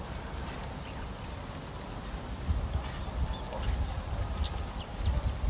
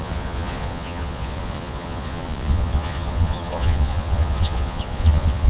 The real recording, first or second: first